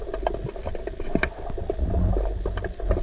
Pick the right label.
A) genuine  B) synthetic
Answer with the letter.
A